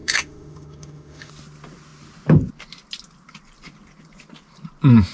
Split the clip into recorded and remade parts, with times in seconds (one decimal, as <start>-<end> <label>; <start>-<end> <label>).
0.0-1.3 remade; 1.3-5.1 recorded